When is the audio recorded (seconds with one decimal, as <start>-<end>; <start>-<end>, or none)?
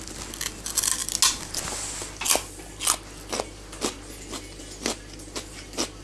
0.0-6.0